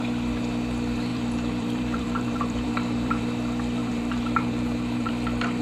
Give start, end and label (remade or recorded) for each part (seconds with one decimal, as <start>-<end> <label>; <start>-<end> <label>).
0.0-1.1 recorded; 1.1-3.2 remade; 3.2-3.8 recorded; 3.8-5.1 remade; 5.1-5.6 recorded